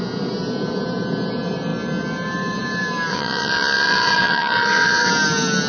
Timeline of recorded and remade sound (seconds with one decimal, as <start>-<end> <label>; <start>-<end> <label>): 0.0-3.1 recorded; 3.1-5.1 remade; 5.1-5.7 recorded